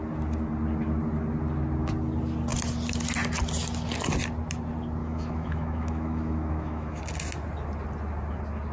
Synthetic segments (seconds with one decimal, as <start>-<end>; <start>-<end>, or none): 5.0-7.0